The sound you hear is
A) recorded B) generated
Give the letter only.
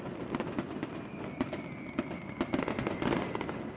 A